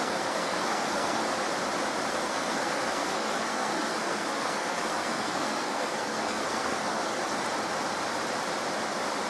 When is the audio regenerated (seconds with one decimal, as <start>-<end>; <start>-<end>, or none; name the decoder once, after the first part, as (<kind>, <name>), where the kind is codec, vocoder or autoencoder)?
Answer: 0.0-1.2 (codec, SNAC); 2.1-7.1